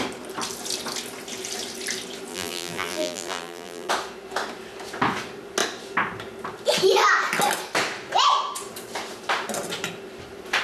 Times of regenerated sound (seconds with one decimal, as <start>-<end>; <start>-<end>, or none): 2.3-3.9